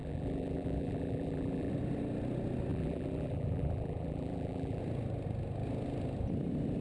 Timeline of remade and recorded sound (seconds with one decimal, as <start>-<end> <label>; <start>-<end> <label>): 0.0-1.7 remade; 1.7-2.7 recorded; 2.7-4.8 remade; 4.8-6.8 recorded